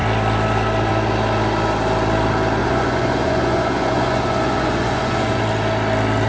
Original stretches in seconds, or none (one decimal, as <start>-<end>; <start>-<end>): 0.0-2.6; 5.4-6.3